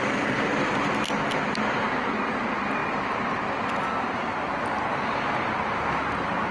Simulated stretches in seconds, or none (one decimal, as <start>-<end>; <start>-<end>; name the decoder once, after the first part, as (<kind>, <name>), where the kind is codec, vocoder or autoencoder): none